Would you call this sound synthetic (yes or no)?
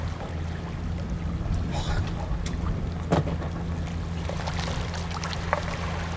no